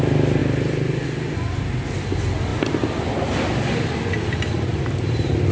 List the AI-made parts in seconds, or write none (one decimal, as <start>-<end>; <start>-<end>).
none